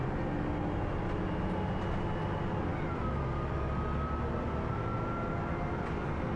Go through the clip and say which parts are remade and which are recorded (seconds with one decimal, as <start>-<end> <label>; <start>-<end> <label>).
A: 0.0-6.4 recorded